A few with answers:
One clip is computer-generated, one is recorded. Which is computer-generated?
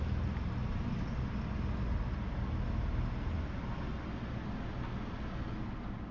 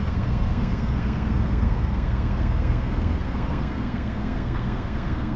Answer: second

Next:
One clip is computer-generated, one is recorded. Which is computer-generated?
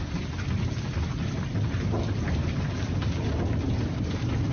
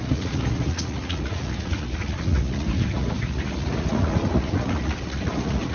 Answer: second